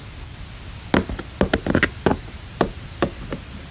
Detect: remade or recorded recorded